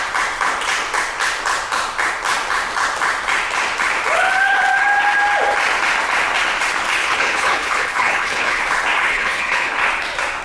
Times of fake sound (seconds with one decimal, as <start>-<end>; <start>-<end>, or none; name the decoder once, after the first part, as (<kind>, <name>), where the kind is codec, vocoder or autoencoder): 7.0-8.6 (codec, HILCodec); 9.1-9.8